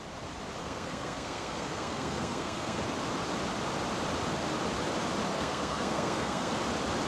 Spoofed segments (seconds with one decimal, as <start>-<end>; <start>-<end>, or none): 0.6-2.8; 5.3-6.5